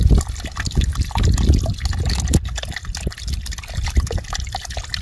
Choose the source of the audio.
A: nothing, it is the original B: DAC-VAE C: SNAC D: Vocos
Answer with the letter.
A